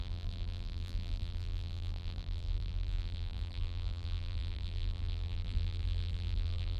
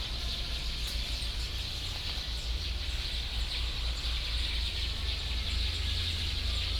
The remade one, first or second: first